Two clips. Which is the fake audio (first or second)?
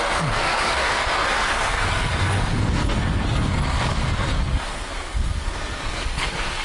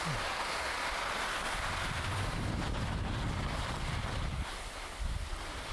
first